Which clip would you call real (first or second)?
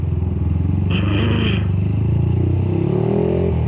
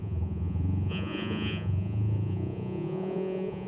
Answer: first